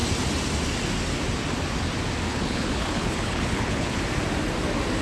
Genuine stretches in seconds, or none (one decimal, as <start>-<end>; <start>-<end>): 0.0-2.3; 4.0-5.0